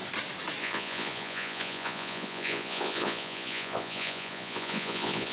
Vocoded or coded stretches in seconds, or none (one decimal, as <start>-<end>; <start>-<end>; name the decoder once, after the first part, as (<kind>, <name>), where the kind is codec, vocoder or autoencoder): 0.6-5.3 (vocoder, Vocos)